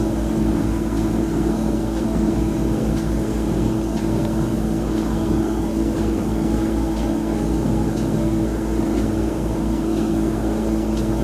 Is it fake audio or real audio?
fake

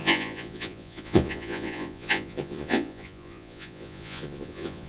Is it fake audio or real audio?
fake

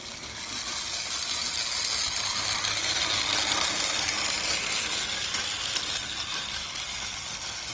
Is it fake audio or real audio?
real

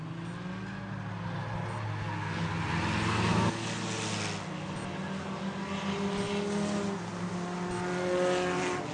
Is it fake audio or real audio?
real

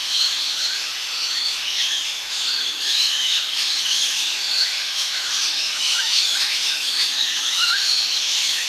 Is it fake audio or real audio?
fake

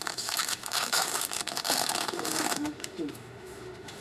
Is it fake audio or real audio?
fake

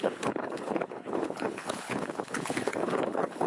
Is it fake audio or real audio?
fake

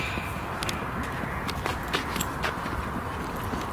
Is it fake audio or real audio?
real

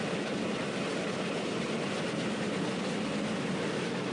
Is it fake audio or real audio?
real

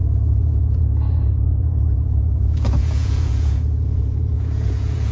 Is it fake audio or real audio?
fake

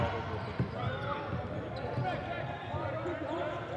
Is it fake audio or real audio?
real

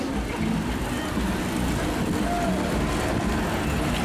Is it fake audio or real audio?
real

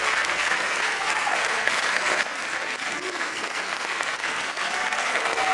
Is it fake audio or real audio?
fake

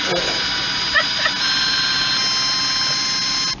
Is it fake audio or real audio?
real